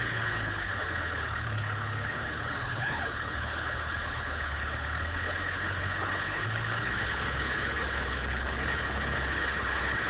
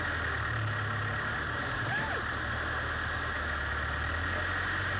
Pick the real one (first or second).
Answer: second